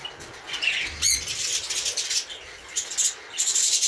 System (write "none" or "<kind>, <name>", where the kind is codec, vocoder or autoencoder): none